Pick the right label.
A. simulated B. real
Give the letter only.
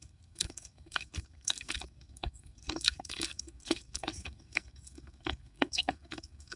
A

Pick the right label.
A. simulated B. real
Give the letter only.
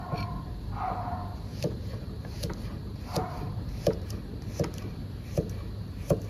A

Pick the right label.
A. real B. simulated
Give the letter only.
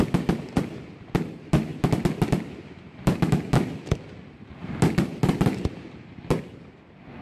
A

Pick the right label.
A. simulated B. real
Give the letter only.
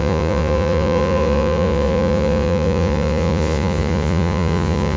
A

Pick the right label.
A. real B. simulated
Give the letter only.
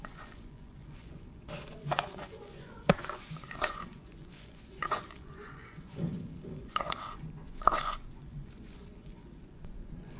B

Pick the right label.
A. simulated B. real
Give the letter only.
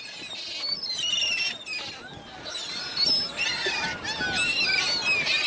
B